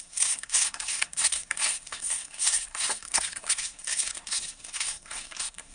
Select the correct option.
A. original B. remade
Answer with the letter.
B